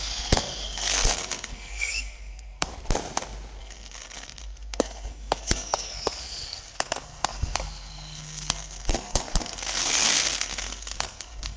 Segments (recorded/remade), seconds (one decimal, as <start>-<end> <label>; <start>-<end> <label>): 0.0-2.7 remade; 2.7-3.6 recorded; 3.6-11.6 remade